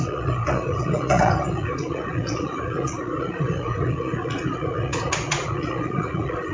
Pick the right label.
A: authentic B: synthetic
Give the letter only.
B